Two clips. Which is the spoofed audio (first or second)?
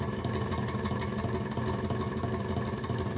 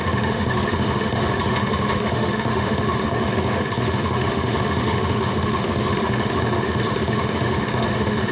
second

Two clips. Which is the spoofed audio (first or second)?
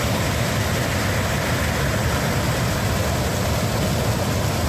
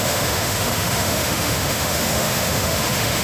second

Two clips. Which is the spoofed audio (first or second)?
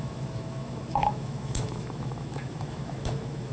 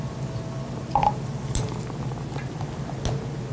first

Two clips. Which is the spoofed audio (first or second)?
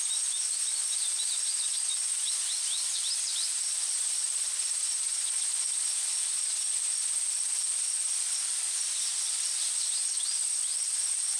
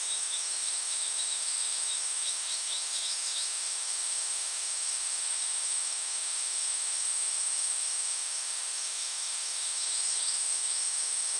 second